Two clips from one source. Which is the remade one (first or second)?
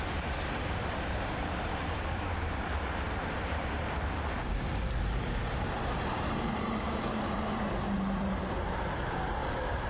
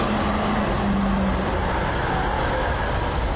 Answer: first